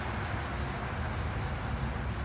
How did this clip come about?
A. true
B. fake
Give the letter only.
A